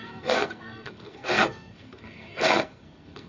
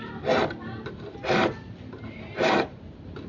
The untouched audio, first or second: second